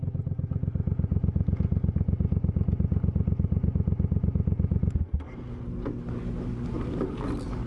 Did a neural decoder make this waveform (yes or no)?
no